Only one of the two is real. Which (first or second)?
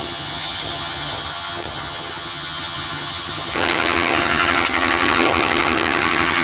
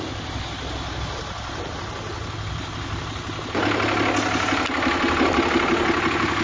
second